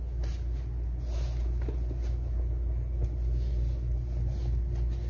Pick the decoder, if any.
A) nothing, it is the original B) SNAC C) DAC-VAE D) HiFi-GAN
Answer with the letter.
A